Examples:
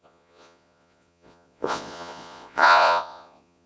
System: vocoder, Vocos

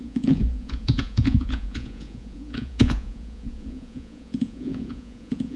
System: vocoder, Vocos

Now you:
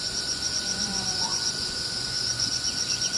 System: vocoder, Vocos